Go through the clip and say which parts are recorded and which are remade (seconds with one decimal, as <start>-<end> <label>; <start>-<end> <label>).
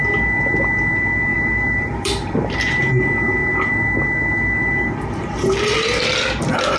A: 0.0-1.3 recorded; 1.3-2.8 remade; 2.8-6.8 recorded